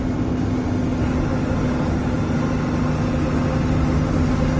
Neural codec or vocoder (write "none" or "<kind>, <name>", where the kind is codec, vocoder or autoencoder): none